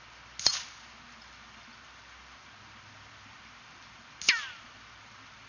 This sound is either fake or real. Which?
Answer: real